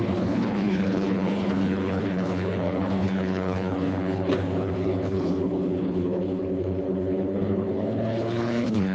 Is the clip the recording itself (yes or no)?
no